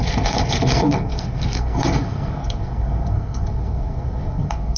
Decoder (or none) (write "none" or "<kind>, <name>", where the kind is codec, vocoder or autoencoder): codec, SNAC